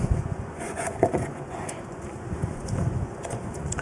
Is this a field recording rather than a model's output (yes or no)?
no